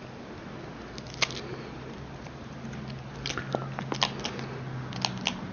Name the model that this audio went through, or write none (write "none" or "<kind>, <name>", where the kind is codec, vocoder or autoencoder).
none